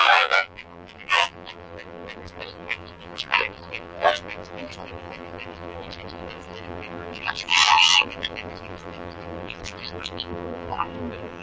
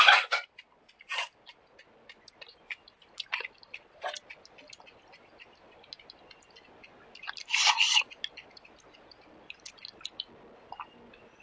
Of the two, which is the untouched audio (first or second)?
second